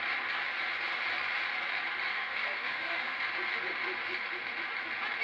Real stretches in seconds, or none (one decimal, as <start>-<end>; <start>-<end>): 0.0-2.1; 3.2-5.2